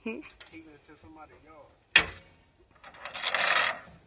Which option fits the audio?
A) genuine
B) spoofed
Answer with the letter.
A